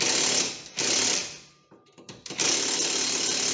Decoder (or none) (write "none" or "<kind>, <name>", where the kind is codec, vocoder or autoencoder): none